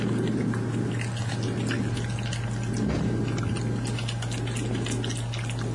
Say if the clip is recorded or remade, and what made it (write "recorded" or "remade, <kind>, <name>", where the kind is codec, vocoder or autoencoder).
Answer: recorded